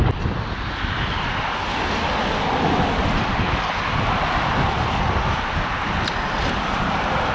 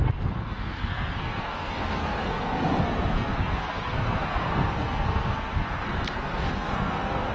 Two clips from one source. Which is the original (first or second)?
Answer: first